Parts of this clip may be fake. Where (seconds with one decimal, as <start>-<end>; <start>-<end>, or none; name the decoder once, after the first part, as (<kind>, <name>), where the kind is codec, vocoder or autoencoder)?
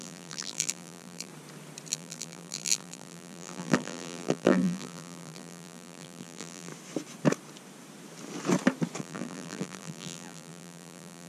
0.0-1.3 (vocoder, BigVGAN v2); 1.9-6.7; 9.0-11.3